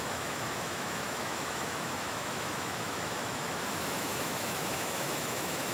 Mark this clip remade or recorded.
remade